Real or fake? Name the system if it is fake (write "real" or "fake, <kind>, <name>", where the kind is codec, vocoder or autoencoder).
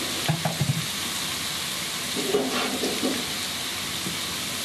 real